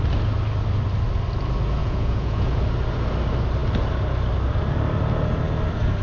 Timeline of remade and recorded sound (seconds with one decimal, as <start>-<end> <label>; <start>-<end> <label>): 0.0-1.8 recorded; 1.8-2.6 remade; 2.6-6.0 recorded